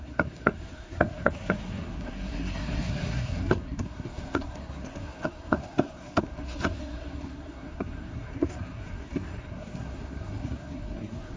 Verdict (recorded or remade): remade